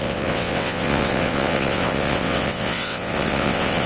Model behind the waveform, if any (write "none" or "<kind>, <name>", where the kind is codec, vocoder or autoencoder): vocoder, WaveNeXt